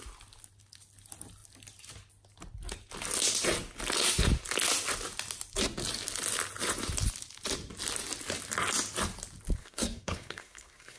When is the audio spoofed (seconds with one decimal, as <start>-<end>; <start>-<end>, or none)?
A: 9.6-11.0